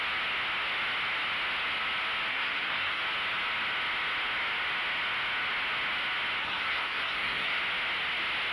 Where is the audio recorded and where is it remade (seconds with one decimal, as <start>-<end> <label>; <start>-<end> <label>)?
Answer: 0.0-2.3 recorded; 2.3-3.0 remade; 3.0-6.4 recorded; 6.4-7.6 remade; 7.6-8.5 recorded